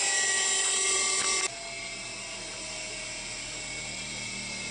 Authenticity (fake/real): real